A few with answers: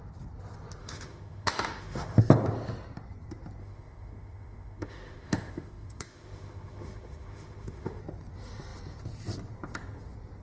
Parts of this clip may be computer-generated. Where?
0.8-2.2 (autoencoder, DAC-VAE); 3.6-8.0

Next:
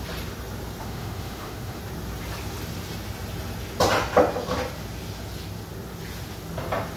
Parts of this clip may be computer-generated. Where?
0.8-1.8 (autoencoder, DAC-VAE)

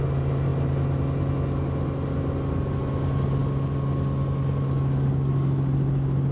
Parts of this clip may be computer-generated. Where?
none